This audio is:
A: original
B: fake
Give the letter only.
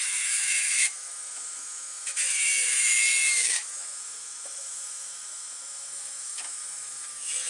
B